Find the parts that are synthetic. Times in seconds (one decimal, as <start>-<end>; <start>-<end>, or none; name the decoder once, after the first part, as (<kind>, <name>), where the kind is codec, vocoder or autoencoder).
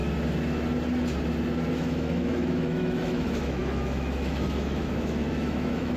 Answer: 1.7-6.0 (autoencoder, DAC-VAE)